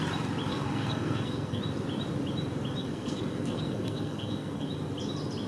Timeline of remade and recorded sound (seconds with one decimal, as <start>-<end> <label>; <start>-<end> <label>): 0.0-0.5 recorded; 0.5-1.6 remade; 1.6-2.8 recorded; 2.8-4.7 remade; 4.7-5.5 recorded